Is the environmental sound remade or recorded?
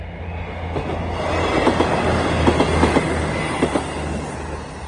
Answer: recorded